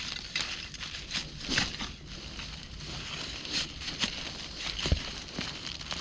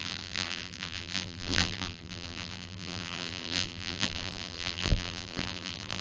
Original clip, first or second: first